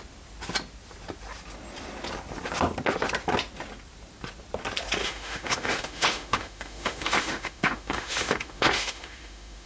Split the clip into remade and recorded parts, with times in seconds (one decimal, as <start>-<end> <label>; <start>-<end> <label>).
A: 0.0-5.0 recorded; 5.0-9.7 remade